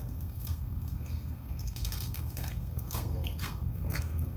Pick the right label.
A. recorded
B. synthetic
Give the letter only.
B